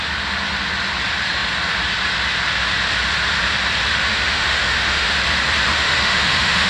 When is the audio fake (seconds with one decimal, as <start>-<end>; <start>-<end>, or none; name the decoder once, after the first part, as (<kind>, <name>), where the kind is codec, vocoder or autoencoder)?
4.1-5.1 (autoencoder, DAC-VAE); 5.7-6.7